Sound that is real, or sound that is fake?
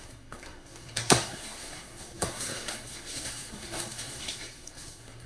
fake